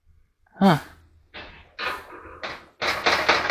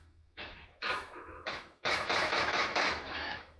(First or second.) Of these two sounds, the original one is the first